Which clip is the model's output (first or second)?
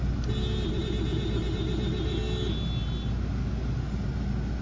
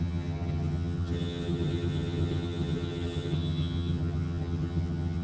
second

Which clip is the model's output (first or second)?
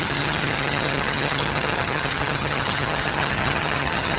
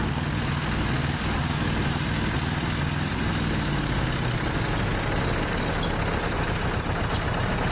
first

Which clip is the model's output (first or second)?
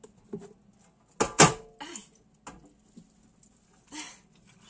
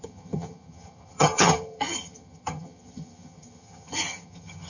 second